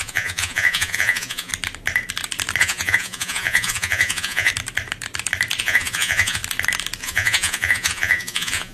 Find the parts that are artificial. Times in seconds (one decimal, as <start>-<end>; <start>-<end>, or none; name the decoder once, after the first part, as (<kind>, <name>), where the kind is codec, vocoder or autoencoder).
0.0-1.5 (vocoder, Vocos); 2.6-4.5; 5.6-6.4; 7.0-8.7